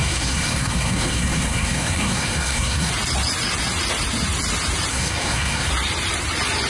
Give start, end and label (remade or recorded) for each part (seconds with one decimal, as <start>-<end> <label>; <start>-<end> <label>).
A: 0.0-2.9 remade; 2.9-4.9 recorded; 4.9-5.7 remade; 5.7-6.7 recorded